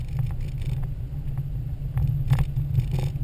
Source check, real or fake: real